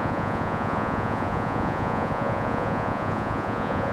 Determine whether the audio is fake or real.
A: fake